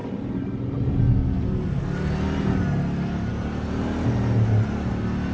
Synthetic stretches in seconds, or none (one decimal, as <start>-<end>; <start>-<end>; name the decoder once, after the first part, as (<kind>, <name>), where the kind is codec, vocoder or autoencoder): none